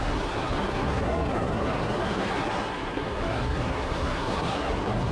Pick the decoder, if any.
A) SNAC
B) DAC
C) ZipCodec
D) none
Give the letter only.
A